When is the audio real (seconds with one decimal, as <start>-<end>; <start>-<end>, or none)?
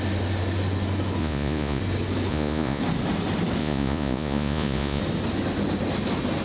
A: 0.0-1.2; 1.8-2.3; 2.8-3.6; 5.0-6.4